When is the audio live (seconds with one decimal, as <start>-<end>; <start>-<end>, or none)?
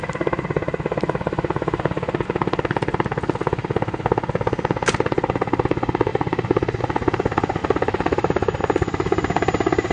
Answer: 0.0-6.1; 6.8-7.6; 8.6-9.9